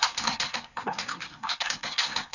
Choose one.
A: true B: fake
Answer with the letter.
B